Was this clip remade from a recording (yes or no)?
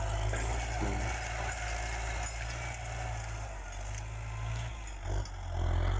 no